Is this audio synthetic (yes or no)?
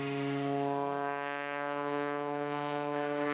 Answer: yes